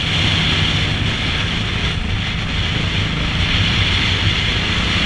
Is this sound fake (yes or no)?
no